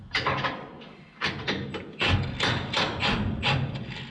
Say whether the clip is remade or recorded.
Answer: recorded